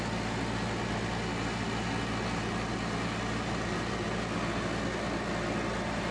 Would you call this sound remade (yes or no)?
no